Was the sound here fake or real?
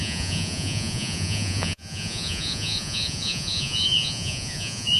fake